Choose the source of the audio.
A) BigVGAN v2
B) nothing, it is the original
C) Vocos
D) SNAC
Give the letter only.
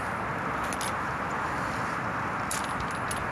B